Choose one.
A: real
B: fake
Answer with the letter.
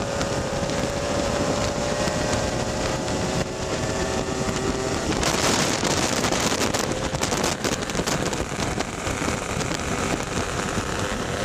B